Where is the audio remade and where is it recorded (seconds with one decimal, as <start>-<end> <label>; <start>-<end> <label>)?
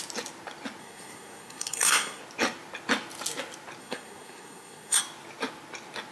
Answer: 0.0-0.8 recorded; 0.8-2.2 remade; 2.2-3.8 recorded; 3.8-5.0 remade; 5.0-6.1 recorded